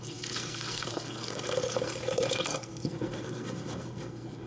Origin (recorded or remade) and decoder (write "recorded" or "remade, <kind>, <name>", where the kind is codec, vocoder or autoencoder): remade, codec, SNAC